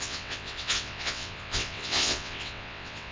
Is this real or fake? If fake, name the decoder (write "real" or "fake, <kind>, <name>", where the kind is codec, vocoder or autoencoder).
fake, vocoder, WaveNeXt